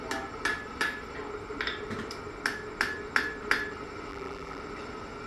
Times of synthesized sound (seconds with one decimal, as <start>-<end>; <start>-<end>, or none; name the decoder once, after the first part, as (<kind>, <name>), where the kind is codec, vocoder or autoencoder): 4.1-4.6 (vocoder, BigVGAN v2)